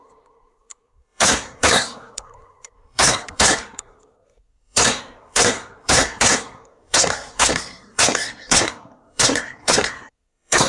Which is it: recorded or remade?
remade